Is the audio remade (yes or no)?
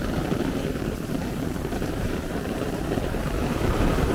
yes